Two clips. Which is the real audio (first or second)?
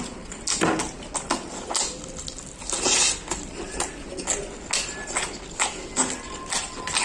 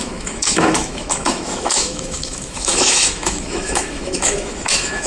first